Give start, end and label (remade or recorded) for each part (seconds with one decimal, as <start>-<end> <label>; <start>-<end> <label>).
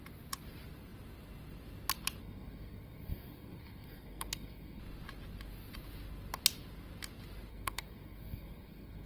0.0-2.2 recorded; 2.2-4.8 remade; 4.8-7.5 recorded; 7.5-9.1 remade